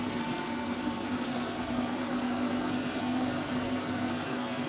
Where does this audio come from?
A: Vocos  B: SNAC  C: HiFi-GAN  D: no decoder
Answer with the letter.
B